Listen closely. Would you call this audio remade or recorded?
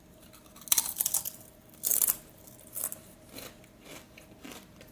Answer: recorded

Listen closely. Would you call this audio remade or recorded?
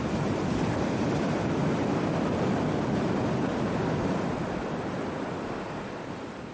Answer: remade